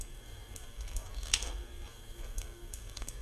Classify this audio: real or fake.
fake